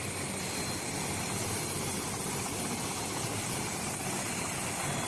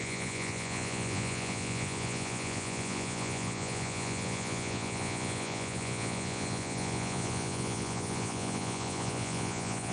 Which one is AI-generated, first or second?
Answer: second